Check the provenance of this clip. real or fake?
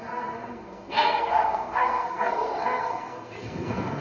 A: fake